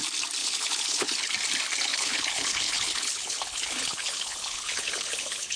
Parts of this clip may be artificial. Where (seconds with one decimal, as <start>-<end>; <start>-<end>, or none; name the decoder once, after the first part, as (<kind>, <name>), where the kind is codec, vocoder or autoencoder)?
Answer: 0.4-1.3 (codec, HILCodec); 1.9-5.6